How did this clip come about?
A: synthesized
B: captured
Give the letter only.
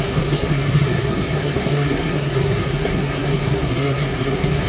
A